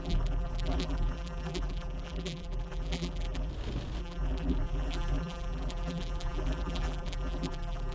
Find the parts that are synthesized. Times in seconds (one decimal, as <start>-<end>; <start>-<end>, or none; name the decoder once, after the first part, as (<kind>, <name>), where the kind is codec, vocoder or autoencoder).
0.0-3.5 (vocoder, BigVGAN v2); 4.0-7.9